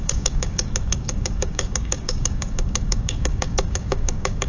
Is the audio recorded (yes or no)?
no